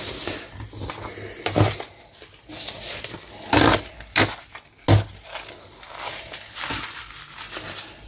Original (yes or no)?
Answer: yes